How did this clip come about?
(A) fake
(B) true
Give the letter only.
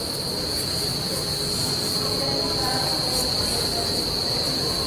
B